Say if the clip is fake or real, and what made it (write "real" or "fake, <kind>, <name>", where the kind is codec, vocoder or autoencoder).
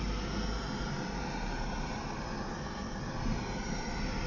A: real